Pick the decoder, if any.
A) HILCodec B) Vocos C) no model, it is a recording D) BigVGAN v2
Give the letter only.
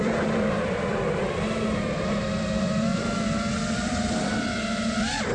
D